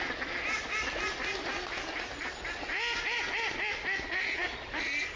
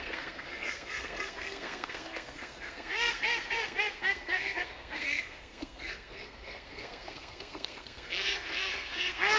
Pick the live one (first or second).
first